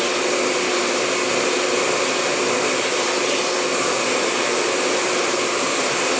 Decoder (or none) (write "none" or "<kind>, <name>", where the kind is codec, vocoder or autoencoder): none